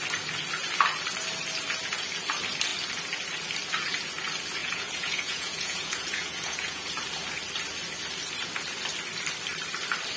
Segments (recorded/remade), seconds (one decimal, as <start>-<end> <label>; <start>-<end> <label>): 0.0-4.6 recorded; 4.6-6.9 remade; 6.9-10.2 recorded